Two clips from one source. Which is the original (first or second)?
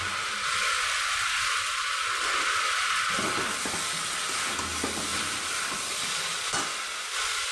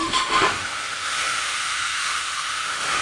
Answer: first